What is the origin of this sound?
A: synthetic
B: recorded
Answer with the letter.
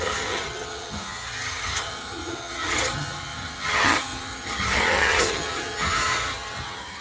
A